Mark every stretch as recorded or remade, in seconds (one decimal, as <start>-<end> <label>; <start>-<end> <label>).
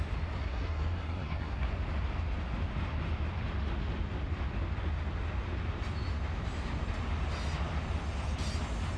0.0-0.4 recorded; 0.4-1.7 remade; 1.7-9.0 recorded